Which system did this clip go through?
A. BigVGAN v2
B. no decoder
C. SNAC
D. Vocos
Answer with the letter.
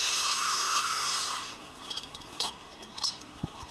C